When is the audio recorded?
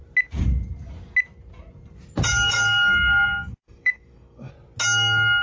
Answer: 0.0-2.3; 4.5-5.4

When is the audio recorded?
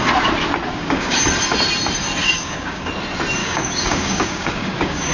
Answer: 0.0-0.7; 1.2-2.2; 2.9-3.4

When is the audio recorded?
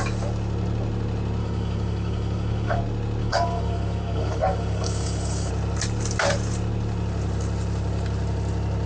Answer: 0.0-1.4; 2.8-3.2; 5.5-8.9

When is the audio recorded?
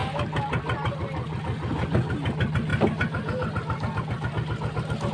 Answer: 0.0-5.1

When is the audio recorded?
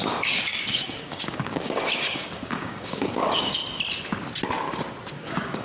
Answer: 3.6-5.1